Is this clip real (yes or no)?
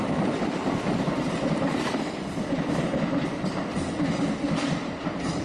yes